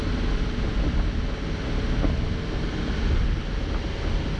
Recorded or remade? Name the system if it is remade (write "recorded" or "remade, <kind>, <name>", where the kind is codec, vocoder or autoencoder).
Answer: recorded